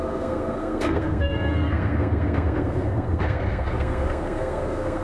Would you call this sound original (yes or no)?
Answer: no